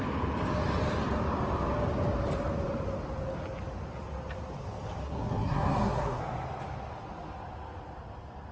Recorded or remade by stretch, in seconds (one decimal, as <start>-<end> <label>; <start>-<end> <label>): 0.0-5.0 recorded; 5.0-6.2 remade; 6.2-8.5 recorded